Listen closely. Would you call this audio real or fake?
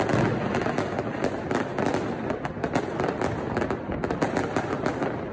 real